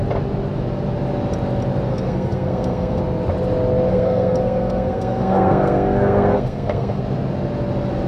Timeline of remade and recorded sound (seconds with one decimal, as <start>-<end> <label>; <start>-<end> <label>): 0.0-1.9 recorded; 1.9-3.0 remade; 3.0-3.9 recorded; 3.9-7.0 remade; 7.0-8.1 recorded